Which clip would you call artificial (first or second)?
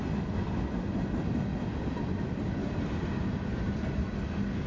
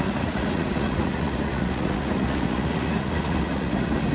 second